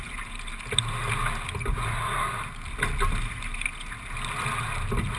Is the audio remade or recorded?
recorded